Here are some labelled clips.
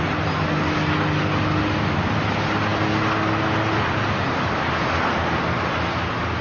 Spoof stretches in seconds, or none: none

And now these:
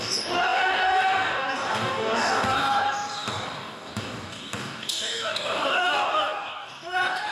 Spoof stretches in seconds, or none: 0.0-7.3 (codec, DAC)

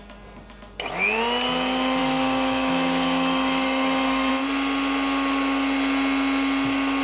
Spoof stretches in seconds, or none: 2.0-4.3 (codec, DAC)

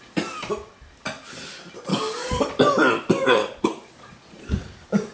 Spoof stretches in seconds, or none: 1.9-2.4 (codec, DAC); 3.4-4.1

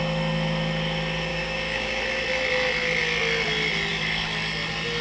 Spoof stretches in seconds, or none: 1.3-2.0 (codec, DAC)

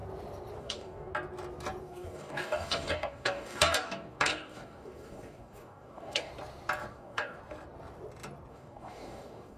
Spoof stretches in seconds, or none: 0.6-1.1 (codec, DAC); 1.8-6.3; 6.9-7.4; 8.5-9.6

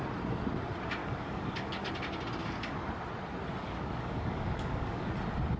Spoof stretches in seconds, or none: 1.0-1.9 (codec, DAC); 2.4-2.9; 3.6-5.1

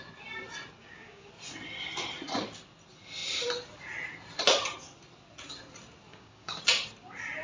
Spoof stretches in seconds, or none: 0.8-1.3 (codec, DAC); 6.1-6.6